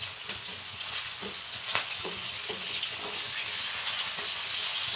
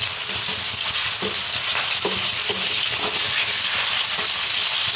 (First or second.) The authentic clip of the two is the second